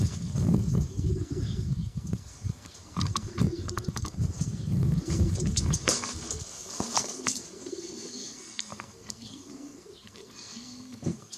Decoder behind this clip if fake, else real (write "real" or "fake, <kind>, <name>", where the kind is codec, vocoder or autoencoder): fake, codec, SNAC